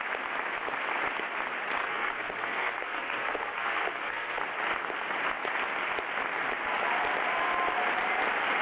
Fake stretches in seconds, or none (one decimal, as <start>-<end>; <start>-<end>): 1.8-4.4